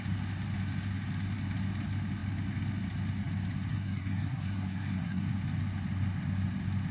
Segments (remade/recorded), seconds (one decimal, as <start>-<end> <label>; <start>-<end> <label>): 0.0-3.7 recorded; 3.7-5.3 remade; 5.3-6.9 recorded

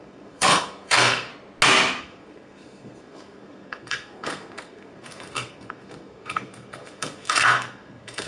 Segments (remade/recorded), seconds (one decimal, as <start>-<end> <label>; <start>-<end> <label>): 0.0-1.3 remade; 1.3-2.0 recorded; 2.0-8.3 remade

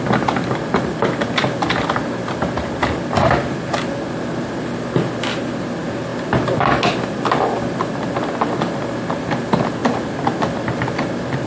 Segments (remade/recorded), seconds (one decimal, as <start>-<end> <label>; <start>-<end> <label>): 0.0-11.5 recorded

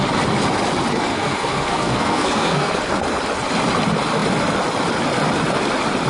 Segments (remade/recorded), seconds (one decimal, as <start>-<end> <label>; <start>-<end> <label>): 0.0-1.1 recorded; 1.1-2.7 remade; 2.7-6.1 recorded

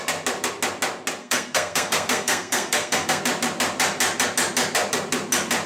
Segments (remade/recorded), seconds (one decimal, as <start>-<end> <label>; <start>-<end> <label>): 0.0-1.2 recorded; 1.2-3.2 remade; 3.2-5.7 recorded

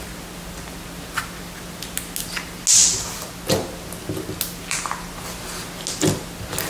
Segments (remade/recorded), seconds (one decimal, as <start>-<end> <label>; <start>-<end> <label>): 0.0-6.7 recorded